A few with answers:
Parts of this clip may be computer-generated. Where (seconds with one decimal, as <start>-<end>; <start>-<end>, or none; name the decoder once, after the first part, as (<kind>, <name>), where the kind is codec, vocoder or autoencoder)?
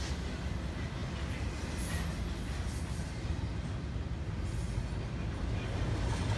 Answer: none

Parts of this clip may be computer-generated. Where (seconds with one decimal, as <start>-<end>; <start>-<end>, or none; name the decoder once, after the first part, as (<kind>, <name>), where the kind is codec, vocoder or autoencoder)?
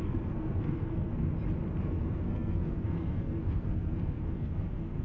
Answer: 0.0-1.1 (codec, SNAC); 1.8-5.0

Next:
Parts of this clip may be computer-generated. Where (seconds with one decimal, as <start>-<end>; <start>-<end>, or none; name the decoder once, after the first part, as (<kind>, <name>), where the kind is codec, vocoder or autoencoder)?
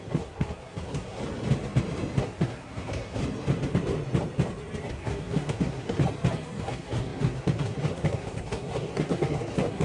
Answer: 0.0-1.2 (codec, SNAC); 2.2-3.2; 4.9-6.0; 6.6-9.8